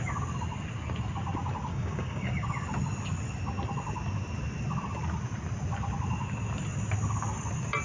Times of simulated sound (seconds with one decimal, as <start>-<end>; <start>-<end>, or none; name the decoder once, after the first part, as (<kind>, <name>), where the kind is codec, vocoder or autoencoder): 1.7-2.3 (codec, DAC)